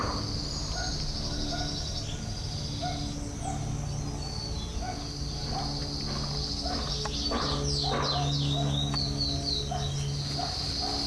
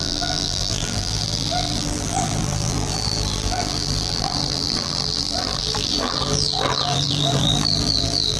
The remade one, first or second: second